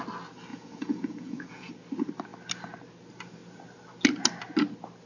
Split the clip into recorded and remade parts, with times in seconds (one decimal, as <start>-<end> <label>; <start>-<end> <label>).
0.0-0.5 recorded; 0.5-1.7 remade; 1.7-5.1 recorded